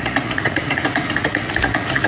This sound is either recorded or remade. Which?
remade